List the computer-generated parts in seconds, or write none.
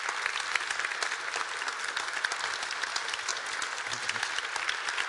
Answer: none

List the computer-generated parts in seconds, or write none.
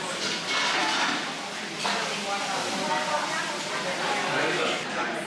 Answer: none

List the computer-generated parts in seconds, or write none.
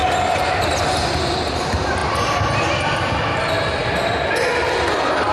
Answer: none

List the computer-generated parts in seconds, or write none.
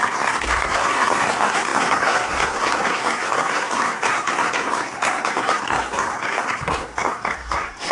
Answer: 0.0-7.9 (codec, SNAC)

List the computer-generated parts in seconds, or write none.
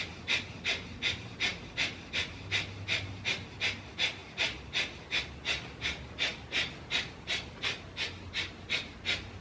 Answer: none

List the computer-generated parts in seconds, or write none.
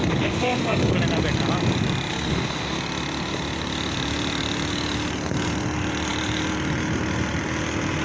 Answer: 0.0-0.9 (codec, SNAC); 2.1-2.8